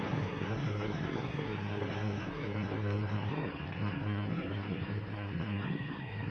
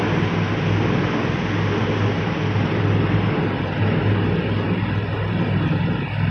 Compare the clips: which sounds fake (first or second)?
first